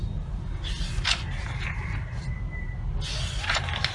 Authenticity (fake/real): real